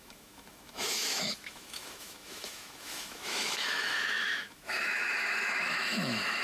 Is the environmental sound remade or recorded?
remade